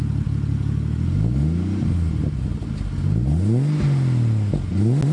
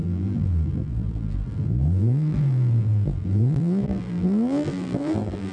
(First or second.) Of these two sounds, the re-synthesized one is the second